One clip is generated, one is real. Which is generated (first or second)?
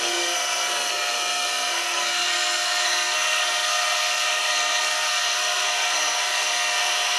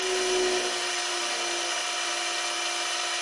first